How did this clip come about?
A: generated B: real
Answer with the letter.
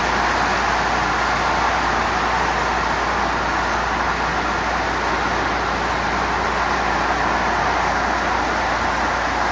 B